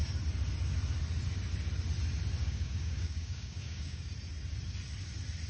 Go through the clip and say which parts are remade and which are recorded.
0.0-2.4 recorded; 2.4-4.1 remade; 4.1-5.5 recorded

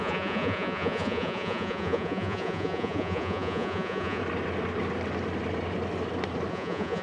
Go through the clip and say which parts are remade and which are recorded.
0.0-4.2 remade; 4.2-6.5 recorded; 6.5-7.0 remade

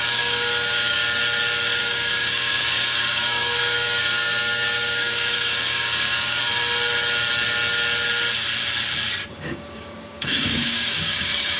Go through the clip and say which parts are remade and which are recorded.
0.0-1.0 remade; 1.0-1.8 recorded; 1.8-6.5 remade; 6.5-9.3 recorded; 9.3-11.6 remade

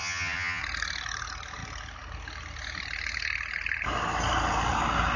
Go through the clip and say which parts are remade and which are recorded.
0.0-0.6 remade; 0.6-5.2 recorded

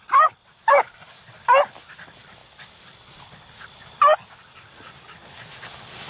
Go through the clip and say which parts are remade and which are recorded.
0.0-6.1 recorded

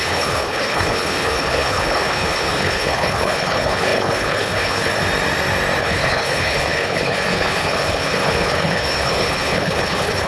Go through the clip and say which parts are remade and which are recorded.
0.0-4.9 remade; 4.9-5.8 recorded; 5.8-10.3 remade

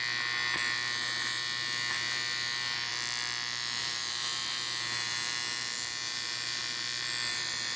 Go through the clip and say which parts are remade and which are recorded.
0.0-7.8 recorded

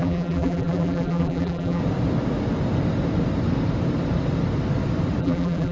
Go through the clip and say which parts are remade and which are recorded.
0.0-1.8 remade; 1.8-5.2 recorded; 5.2-5.7 remade